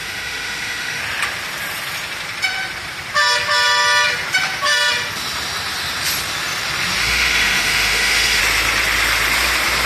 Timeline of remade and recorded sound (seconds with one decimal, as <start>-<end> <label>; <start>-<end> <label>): 0.0-1.0 remade; 1.0-7.0 recorded; 7.0-8.4 remade; 8.4-9.9 recorded

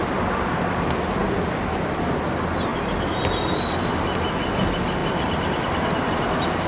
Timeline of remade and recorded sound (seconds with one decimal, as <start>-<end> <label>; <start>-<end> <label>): 0.0-2.7 recorded; 2.7-3.8 remade; 3.8-5.0 recorded; 5.0-6.1 remade; 6.1-6.7 recorded

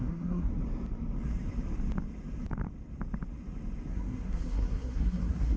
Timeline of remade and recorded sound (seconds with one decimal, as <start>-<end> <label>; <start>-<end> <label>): 0.0-0.5 remade; 0.5-3.9 recorded; 3.9-5.6 remade

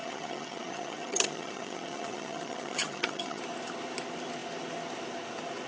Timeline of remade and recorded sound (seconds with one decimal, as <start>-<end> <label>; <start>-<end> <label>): 0.0-3.4 remade; 3.4-5.7 recorded

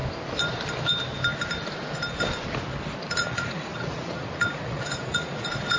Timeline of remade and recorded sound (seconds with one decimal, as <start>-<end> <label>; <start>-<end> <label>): 0.0-3.1 recorded; 3.1-5.8 remade

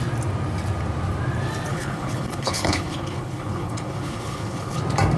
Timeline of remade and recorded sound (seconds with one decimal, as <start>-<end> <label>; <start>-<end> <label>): 0.0-1.7 recorded; 1.7-4.8 remade; 4.8-5.2 recorded

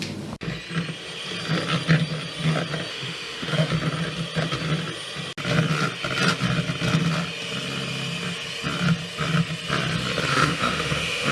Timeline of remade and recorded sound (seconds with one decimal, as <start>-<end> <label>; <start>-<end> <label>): 0.0-2.9 recorded; 2.9-3.7 remade; 3.7-10.3 recorded; 10.3-11.3 remade